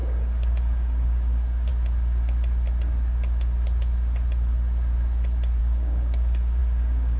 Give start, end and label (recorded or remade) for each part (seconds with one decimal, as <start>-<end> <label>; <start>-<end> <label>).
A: 0.0-1.7 remade; 1.7-5.6 recorded; 5.6-7.2 remade